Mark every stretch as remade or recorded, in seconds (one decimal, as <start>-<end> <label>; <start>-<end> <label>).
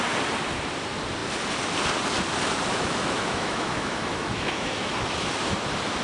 0.0-2.7 recorded; 2.7-4.9 remade; 4.9-6.0 recorded